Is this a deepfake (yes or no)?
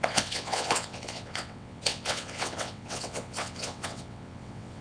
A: yes